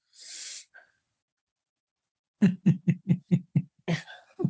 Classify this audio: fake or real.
real